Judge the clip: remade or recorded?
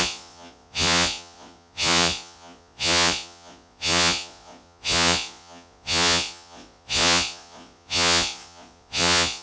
remade